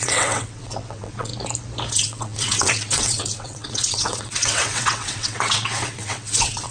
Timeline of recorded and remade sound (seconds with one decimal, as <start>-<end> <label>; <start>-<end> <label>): 0.0-1.3 remade; 1.3-1.9 recorded; 1.9-6.7 remade